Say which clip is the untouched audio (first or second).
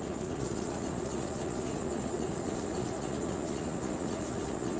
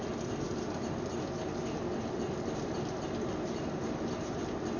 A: second